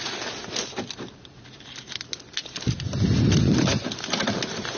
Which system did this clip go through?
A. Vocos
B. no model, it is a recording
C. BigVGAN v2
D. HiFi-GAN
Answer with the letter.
B